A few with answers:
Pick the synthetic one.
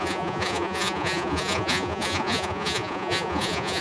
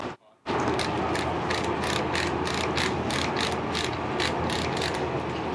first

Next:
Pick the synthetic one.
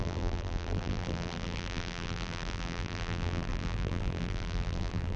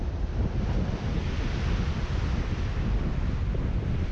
first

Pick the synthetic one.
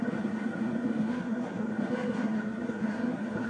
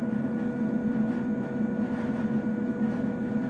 first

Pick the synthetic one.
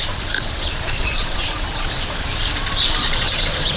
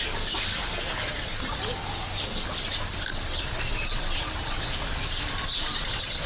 first